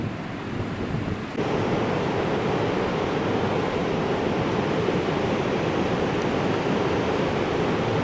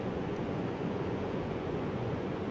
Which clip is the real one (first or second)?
first